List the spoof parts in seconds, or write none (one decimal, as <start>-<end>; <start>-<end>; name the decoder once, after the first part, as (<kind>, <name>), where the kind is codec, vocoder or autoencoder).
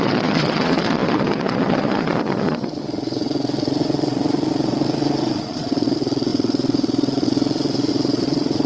0.0-8.7 (vocoder, Vocos)